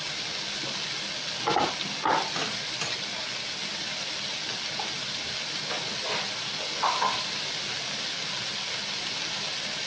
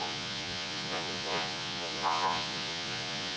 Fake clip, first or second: second